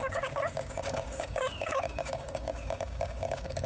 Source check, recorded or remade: remade